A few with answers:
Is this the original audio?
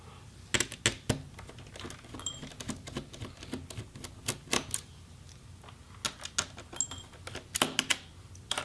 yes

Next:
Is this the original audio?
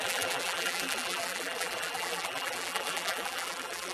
no